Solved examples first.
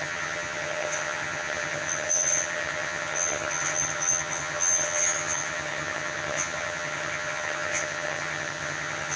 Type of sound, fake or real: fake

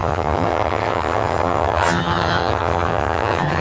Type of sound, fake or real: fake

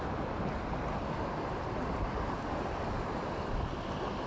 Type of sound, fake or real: real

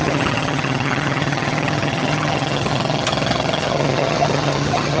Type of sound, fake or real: fake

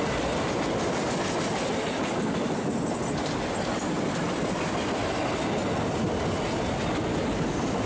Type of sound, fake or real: real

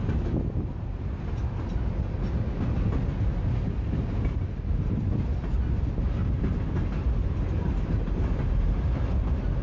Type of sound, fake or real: real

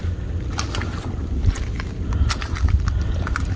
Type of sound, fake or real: real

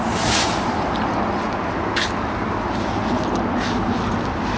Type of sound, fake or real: real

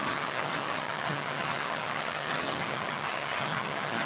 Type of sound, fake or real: fake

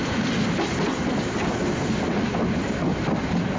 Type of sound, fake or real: real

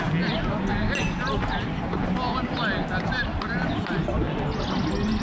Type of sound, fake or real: real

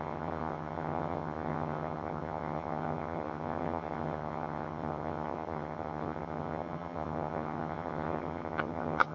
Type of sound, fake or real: fake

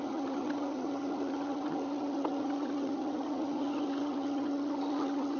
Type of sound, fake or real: fake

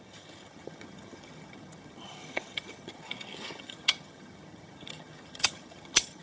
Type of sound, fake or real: fake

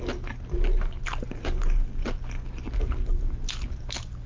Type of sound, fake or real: real